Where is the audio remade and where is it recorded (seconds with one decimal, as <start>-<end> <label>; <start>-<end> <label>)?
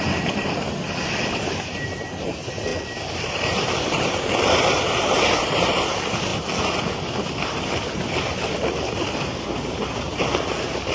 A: 0.0-10.9 recorded